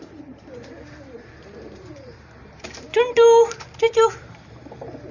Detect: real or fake fake